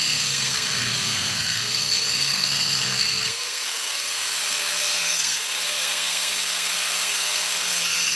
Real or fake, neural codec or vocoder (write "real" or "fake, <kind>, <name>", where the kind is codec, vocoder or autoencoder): fake, codec, SNAC